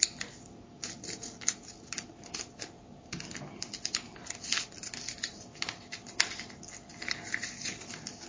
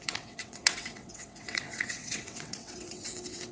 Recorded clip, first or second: first